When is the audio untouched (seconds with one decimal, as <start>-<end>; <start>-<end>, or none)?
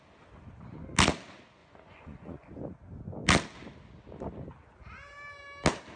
0.0-1.6; 2.5-6.0